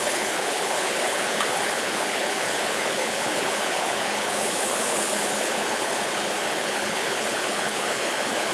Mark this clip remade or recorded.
remade